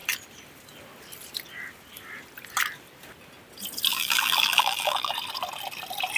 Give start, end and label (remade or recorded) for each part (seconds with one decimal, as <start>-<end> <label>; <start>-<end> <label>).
0.0-3.9 recorded; 3.9-5.1 remade; 5.1-6.2 recorded